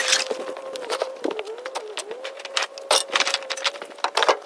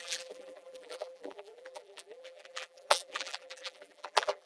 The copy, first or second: second